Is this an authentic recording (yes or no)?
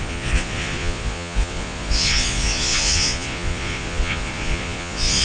no